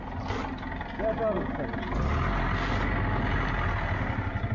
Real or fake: real